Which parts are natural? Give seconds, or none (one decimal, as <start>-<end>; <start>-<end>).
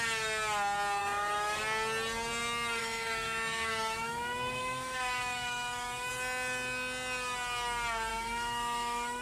0.0-1.0; 1.6-2.8; 6.1-8.1